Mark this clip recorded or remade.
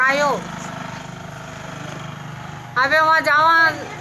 recorded